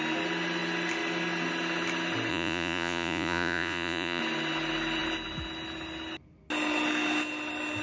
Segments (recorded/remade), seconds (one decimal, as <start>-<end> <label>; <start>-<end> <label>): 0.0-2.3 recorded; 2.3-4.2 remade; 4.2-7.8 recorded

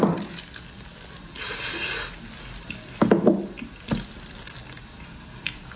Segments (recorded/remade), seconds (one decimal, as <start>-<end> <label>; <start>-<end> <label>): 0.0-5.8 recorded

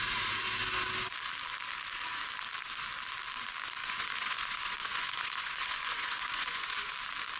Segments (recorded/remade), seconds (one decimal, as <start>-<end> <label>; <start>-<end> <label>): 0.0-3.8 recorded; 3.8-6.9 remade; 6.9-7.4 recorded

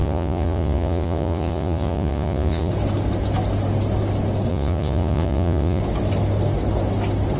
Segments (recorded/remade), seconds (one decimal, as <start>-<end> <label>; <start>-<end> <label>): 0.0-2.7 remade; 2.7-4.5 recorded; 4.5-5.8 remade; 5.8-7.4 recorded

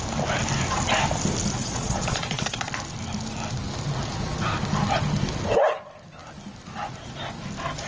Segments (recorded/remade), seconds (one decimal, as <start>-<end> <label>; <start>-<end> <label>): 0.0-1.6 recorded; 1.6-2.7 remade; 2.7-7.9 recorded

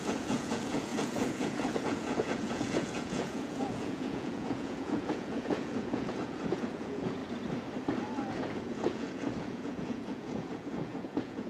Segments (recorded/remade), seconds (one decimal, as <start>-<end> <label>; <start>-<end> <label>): 0.0-7.2 remade; 7.2-8.3 recorded; 8.3-11.5 remade